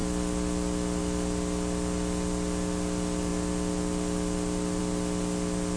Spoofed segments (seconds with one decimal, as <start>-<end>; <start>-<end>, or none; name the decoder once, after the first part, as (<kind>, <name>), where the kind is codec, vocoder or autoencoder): none